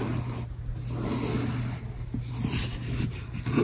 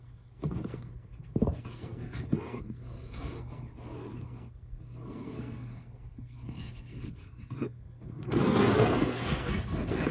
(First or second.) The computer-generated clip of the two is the second